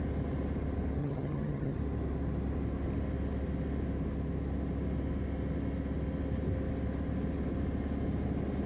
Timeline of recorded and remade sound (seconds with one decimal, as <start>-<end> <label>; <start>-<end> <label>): 0.0-1.0 recorded; 1.0-1.8 remade; 1.8-8.7 recorded